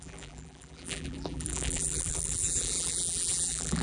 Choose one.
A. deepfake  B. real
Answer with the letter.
A